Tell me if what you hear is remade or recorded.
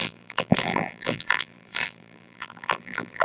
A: remade